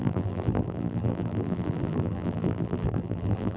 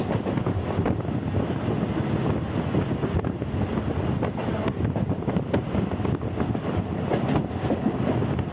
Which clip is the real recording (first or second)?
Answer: second